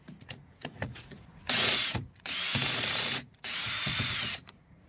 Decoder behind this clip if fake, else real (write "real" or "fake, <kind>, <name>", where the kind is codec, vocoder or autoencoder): fake, vocoder, Vocos